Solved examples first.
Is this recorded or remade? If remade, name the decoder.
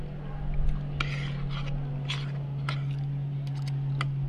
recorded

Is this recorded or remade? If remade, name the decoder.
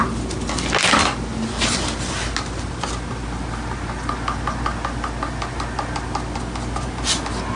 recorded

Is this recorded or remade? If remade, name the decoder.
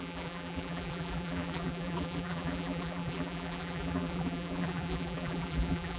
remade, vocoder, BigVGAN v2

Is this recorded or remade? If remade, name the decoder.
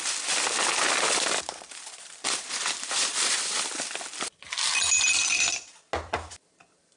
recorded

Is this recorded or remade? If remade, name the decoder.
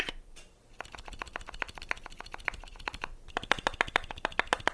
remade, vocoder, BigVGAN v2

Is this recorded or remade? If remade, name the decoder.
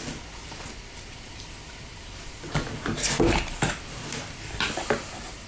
recorded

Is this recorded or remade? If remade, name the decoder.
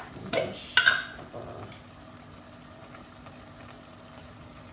recorded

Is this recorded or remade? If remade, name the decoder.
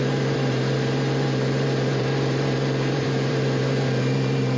remade, vocoder, BigVGAN v2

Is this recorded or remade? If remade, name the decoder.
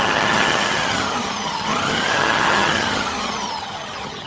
remade, vocoder, HiFi-GAN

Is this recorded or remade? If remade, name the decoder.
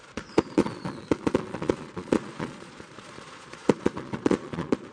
remade, vocoder, Vocos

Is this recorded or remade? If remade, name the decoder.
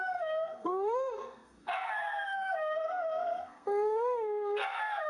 remade, codec, SNAC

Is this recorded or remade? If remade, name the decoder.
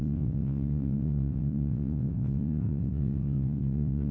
remade, vocoder, WaveNeXt